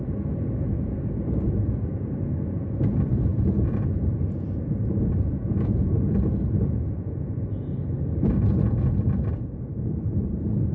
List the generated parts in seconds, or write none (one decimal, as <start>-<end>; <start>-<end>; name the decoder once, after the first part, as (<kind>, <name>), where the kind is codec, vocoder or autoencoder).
0.0-10.7 (vocoder, Vocos)